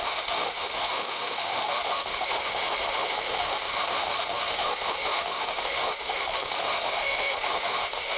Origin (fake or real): fake